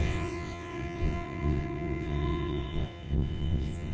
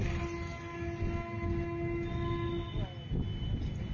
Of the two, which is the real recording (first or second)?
second